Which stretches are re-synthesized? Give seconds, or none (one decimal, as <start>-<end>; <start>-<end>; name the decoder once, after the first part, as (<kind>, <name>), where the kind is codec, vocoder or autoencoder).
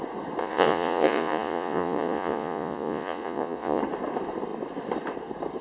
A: 0.4-3.8 (vocoder, Vocos)